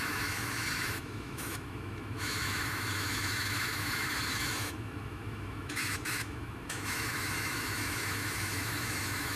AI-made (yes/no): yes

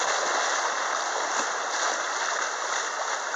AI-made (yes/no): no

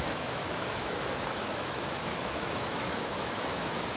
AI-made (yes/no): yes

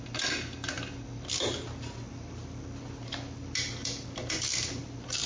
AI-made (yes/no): no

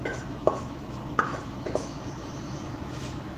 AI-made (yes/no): yes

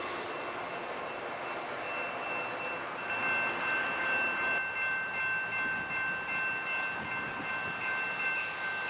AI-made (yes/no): no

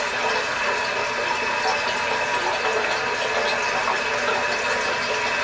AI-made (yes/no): no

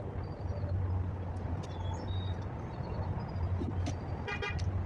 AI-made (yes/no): no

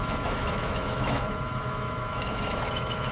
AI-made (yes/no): yes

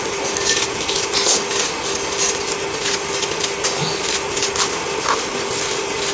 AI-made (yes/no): no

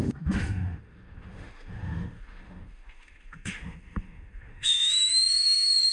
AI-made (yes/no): yes